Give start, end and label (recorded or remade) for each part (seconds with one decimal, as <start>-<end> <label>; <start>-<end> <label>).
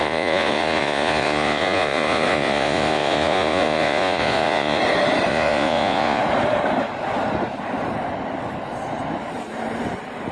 0.0-4.8 remade; 4.8-5.3 recorded; 5.3-6.2 remade; 6.2-10.3 recorded